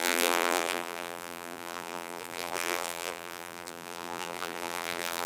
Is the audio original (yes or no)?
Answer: no